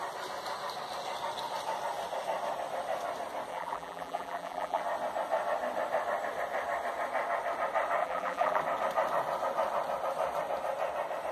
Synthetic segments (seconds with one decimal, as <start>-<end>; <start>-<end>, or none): 3.5-4.8; 8.0-8.6